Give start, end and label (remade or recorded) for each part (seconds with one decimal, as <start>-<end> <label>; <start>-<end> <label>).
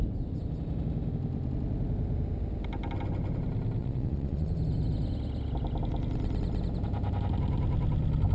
0.0-3.8 recorded; 3.8-4.5 remade; 4.5-8.3 recorded